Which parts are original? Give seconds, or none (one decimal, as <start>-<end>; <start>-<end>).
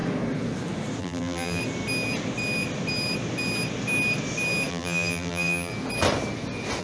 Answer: 0.0-1.0; 1.6-4.7; 5.7-6.8